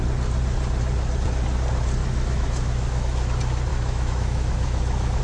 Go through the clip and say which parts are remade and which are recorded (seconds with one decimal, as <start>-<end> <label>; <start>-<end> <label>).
0.0-2.0 recorded; 2.0-3.3 remade; 3.3-3.7 recorded; 3.7-5.2 remade